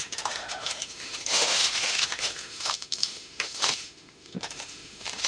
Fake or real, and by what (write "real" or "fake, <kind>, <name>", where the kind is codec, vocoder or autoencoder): fake, autoencoder, DAC-VAE